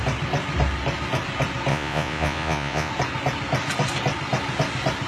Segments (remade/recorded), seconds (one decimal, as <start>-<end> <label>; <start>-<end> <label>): 0.0-1.7 recorded; 1.7-2.9 remade; 2.9-5.1 recorded